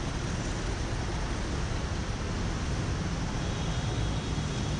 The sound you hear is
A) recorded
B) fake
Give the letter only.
A